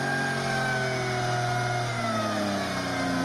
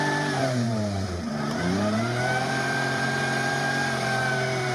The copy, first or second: second